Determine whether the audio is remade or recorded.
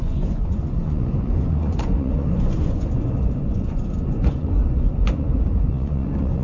remade